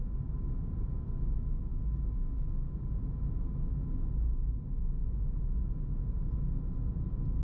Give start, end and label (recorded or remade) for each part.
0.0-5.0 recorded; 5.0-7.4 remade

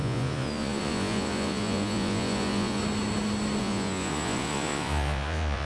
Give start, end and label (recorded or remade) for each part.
0.0-2.8 remade; 2.8-3.6 recorded; 3.6-5.6 remade

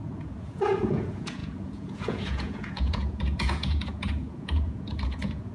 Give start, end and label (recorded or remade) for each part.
0.0-5.5 remade